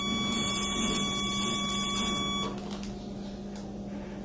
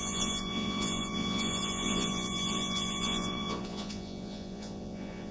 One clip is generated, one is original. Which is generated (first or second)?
second